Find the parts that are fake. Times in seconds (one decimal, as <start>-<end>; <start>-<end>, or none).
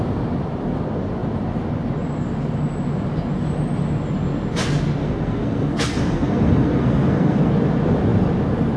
5.0-7.5